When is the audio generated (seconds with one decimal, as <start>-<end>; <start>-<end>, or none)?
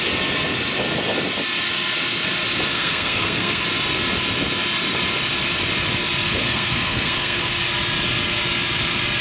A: 2.7-3.6; 6.4-7.6